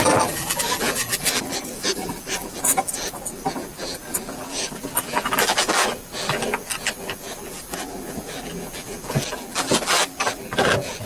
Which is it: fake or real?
fake